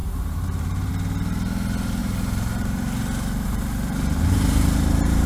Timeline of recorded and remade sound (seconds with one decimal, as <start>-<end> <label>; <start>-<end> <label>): 0.0-0.9 remade; 0.9-2.0 recorded; 2.0-5.3 remade